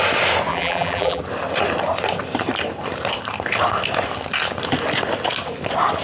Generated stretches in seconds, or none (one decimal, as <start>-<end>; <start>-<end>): 0.5-1.2

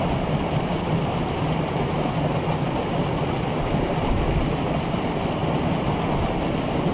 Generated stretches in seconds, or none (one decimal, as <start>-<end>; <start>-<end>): none

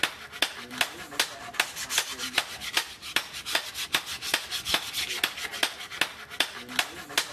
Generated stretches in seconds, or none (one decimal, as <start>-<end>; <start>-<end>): 2.7-3.7